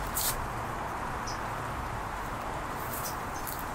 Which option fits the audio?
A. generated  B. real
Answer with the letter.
A